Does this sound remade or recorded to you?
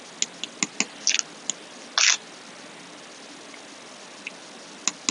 recorded